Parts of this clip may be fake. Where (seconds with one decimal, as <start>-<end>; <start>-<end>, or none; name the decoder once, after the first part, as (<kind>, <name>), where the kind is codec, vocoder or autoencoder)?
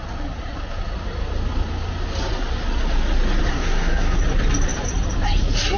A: 3.5-4.2 (codec, SNAC)